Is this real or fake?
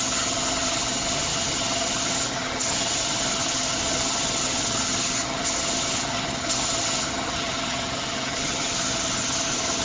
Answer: fake